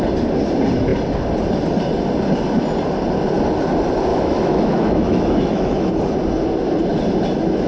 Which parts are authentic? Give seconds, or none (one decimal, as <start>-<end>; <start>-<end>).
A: 0.0-4.1; 5.9-7.7